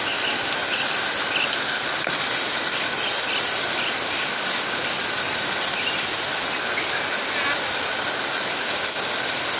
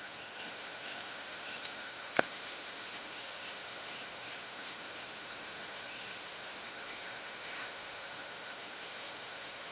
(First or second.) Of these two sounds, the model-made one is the second